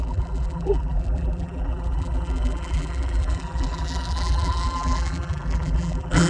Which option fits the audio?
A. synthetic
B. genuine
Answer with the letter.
A